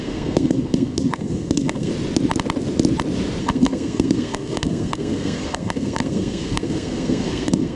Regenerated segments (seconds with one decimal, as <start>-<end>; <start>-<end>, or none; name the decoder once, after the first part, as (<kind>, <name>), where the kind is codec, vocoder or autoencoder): 0.0-1.9 (codec, SNAC); 3.4-7.8